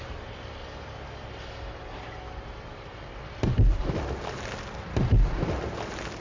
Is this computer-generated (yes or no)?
no